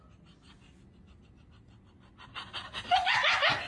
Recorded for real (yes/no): yes